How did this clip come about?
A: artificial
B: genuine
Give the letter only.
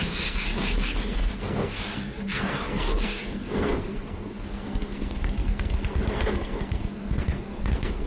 A